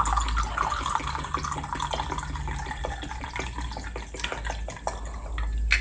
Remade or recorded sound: recorded